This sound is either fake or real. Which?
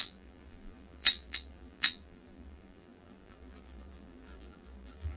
fake